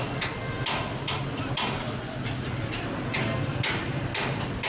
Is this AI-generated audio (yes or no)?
no